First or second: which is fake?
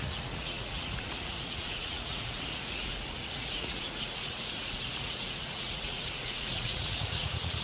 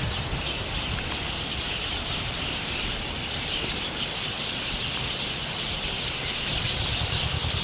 first